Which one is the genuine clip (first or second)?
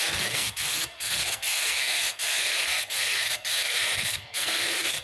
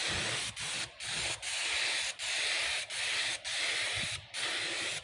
second